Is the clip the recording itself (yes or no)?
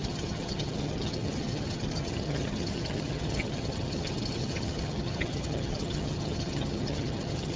no